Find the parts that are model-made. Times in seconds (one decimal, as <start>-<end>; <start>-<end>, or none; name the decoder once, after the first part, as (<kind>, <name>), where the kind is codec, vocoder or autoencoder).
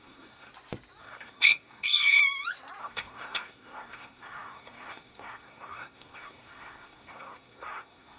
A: 0.0-0.5 (codec, SNAC); 1.0-2.2; 2.8-8.2